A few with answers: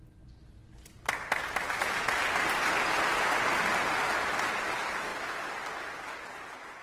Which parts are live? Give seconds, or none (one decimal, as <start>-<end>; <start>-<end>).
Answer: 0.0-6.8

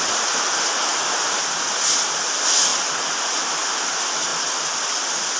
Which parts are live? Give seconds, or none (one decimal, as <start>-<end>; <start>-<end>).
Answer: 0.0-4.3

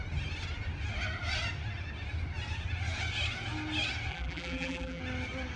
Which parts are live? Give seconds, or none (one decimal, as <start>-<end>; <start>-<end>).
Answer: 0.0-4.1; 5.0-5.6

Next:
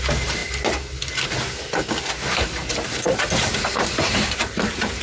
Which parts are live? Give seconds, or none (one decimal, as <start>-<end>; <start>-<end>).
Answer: 0.4-2.1

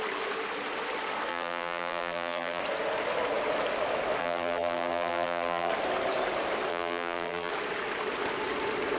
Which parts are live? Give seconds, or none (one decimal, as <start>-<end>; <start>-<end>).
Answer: 0.0-1.3; 2.6-4.2; 5.7-6.7; 7.5-9.0

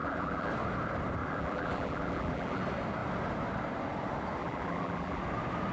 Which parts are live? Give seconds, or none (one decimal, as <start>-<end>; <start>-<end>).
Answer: 0.5-1.2; 2.6-4.4; 5.2-5.7